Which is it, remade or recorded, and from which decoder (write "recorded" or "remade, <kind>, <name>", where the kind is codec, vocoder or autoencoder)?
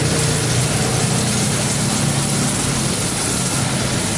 recorded